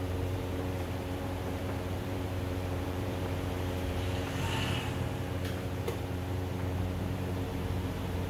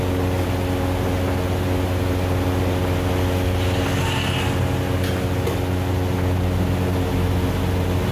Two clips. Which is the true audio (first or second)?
second